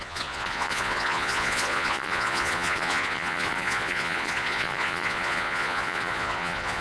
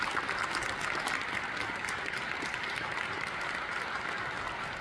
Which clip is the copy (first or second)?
first